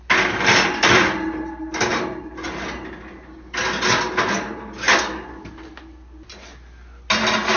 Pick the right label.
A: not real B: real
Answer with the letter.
B